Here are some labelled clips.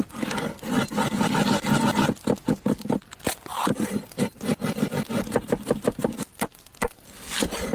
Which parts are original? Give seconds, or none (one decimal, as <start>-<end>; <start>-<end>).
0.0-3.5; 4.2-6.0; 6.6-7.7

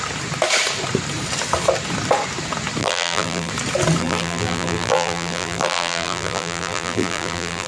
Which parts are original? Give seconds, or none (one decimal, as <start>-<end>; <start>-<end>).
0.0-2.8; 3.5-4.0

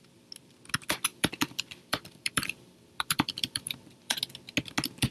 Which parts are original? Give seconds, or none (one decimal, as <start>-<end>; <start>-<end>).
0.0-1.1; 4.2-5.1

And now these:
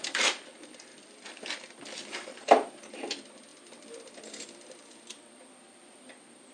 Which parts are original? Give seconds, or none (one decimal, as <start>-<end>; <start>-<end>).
none

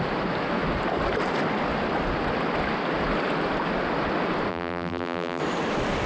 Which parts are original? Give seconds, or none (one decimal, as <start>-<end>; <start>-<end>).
0.0-4.5; 5.4-6.1

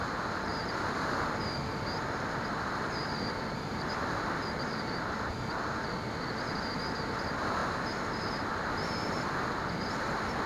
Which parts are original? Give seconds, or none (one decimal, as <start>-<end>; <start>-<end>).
0.0-0.5; 2.5-3.0; 5.3-10.5